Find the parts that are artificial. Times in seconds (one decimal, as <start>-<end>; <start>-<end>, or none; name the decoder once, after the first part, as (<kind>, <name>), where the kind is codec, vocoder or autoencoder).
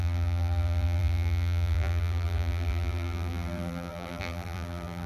0.0-5.1 (vocoder, BigVGAN v2)